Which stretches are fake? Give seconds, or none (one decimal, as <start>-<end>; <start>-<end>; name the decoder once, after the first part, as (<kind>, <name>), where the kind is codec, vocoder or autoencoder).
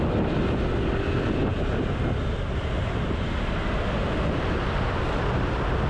none